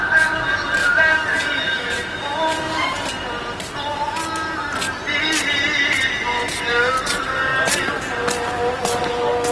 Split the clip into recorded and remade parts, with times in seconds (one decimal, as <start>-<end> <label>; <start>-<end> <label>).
0.0-0.8 recorded; 0.8-3.1 remade; 3.1-9.5 recorded